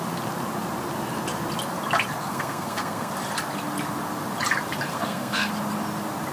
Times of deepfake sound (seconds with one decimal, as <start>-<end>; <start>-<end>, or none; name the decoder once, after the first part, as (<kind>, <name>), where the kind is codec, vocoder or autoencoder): 2.2-3.1 (codec, SNAC); 4.9-5.5